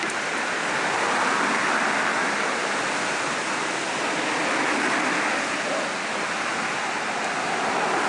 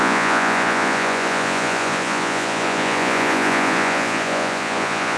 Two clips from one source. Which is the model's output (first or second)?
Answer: second